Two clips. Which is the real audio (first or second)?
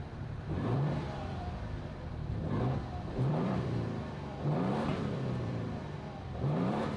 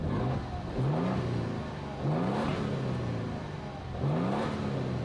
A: second